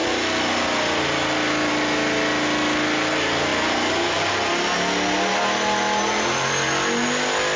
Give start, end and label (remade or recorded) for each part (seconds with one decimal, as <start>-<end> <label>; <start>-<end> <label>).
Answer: 0.0-7.6 recorded